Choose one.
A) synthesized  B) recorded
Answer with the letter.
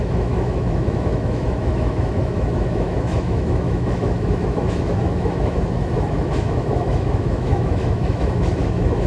A